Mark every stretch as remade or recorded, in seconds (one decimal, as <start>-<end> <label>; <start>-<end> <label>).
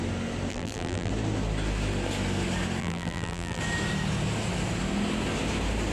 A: 0.0-0.5 recorded; 0.5-1.1 remade; 1.1-2.8 recorded; 2.8-3.6 remade; 3.6-5.9 recorded